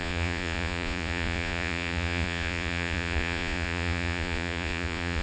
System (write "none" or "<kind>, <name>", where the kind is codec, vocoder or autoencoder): vocoder, Vocos